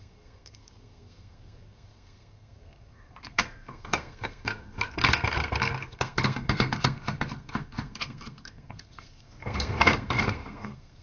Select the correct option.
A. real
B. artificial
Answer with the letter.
B